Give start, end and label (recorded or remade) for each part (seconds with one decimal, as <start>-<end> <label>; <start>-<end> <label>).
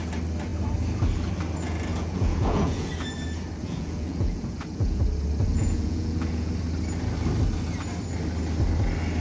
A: 0.0-1.9 recorded; 1.9-2.9 remade; 2.9-3.6 recorded; 3.6-5.0 remade; 5.0-5.5 recorded; 5.5-6.5 remade; 6.5-9.2 recorded